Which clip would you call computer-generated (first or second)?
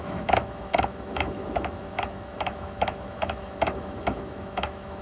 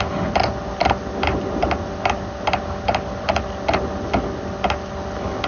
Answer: first